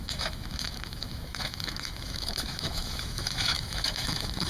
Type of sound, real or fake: fake